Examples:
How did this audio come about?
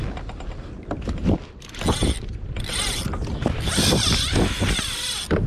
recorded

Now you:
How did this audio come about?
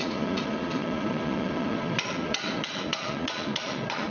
remade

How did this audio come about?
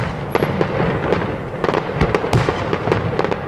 recorded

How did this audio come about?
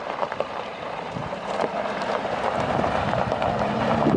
remade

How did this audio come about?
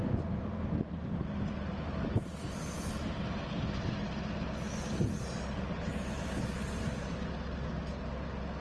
recorded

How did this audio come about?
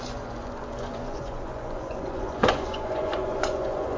remade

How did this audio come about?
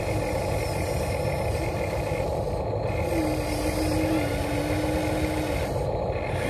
recorded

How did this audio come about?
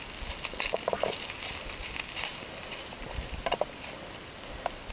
recorded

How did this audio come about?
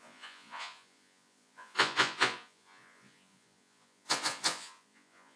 remade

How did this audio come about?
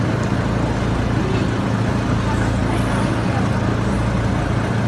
recorded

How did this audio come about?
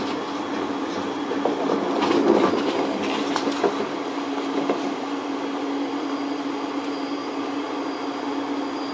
recorded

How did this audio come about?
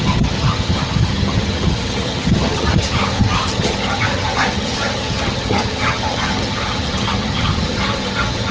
remade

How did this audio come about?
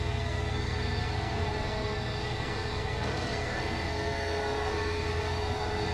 remade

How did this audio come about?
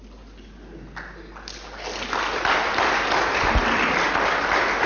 recorded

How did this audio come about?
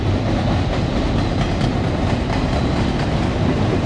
recorded